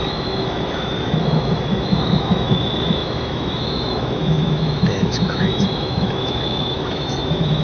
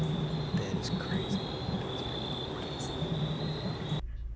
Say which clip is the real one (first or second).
second